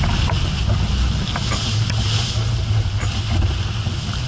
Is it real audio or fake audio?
real